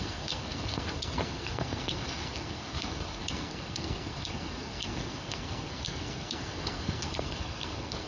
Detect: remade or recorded remade